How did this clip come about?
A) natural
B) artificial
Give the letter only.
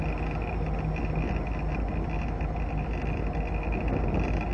A